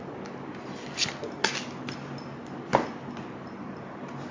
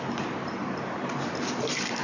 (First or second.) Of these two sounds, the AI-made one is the second